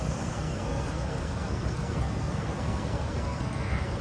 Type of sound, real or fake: fake